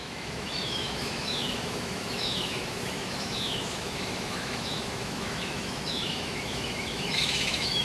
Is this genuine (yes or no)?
no